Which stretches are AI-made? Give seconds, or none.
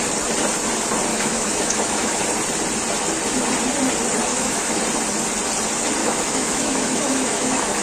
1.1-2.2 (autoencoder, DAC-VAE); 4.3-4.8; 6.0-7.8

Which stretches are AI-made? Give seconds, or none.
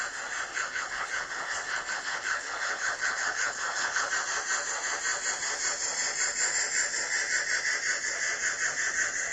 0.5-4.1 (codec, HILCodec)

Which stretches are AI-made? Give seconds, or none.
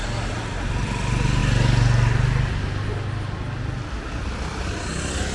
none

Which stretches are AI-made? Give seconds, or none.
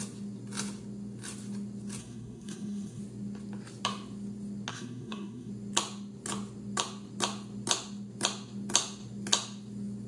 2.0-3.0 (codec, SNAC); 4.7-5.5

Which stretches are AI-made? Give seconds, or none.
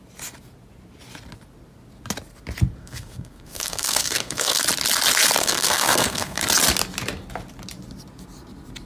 2.8-4.6 (codec, SNAC); 5.4-6.4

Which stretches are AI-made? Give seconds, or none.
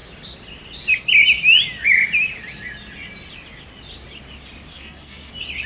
4.7-5.3 (codec, SNAC)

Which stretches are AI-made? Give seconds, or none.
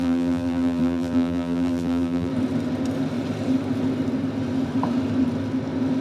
0.0-2.3 (vocoder, BigVGAN v2)